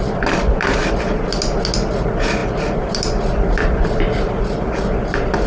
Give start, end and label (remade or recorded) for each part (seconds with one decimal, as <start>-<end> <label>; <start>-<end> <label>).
0.0-5.5 recorded